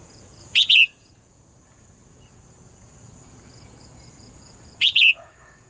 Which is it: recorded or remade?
remade